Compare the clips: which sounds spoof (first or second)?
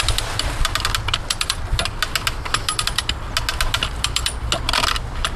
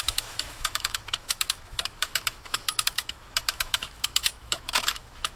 second